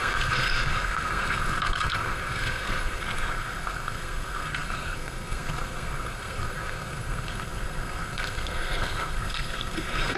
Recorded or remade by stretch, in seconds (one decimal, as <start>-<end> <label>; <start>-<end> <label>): 0.0-10.2 remade